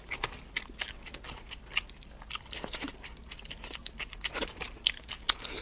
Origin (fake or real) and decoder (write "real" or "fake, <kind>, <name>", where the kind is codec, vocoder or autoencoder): real